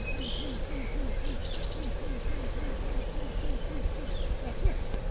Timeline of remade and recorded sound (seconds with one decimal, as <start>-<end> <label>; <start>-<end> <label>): 0.0-5.1 recorded